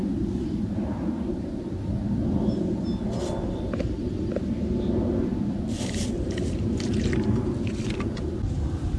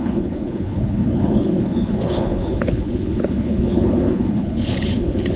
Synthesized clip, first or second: second